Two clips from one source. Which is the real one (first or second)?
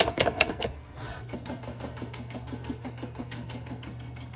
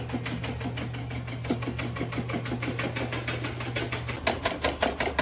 second